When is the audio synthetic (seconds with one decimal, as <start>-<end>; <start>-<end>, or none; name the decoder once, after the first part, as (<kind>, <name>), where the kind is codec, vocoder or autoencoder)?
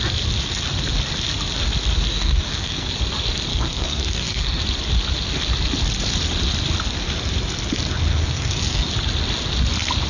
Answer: 2.1-2.9 (codec, SNAC); 3.5-4.6; 8.1-8.9